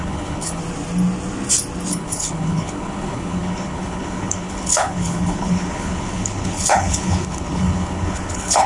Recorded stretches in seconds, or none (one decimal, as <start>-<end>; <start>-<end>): 0.6-1.9